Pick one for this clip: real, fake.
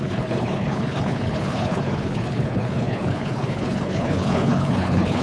fake